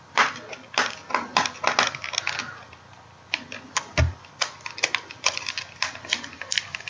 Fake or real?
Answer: fake